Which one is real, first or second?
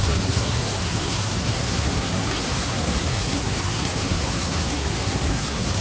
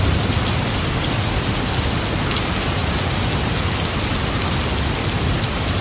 second